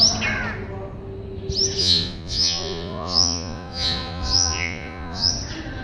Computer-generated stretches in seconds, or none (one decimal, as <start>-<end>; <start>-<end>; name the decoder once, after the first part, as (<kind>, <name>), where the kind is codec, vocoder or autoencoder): 1.8-5.3 (vocoder, Vocos)